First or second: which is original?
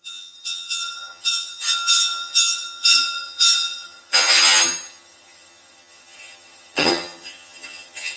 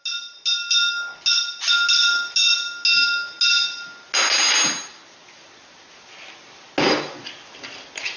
second